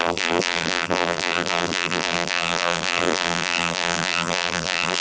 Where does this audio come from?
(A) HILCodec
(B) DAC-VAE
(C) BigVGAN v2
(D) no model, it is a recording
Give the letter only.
C